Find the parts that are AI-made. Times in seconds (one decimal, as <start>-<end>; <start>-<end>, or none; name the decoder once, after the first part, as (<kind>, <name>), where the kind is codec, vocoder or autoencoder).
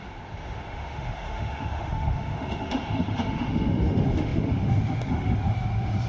0.0-6.1 (autoencoder, DAC-VAE)